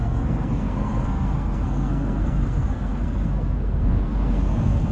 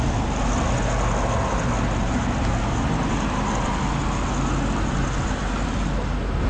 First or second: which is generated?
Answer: first